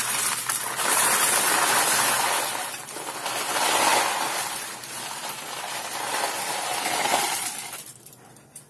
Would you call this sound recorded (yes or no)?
yes